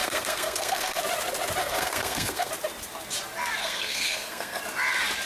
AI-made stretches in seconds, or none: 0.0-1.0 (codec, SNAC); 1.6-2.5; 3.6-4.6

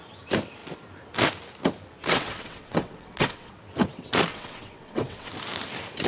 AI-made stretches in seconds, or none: 2.1-3.5 (vocoder, WaveNeXt); 4.3-5.3

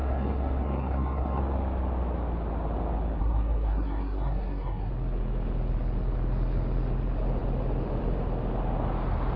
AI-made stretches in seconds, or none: 0.0-1.4 (codec, SNAC); 3.2-4.9

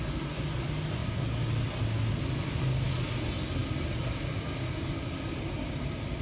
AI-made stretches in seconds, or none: none